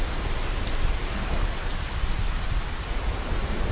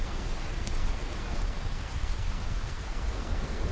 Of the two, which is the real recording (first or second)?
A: first